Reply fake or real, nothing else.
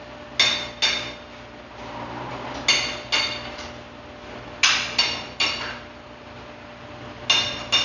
real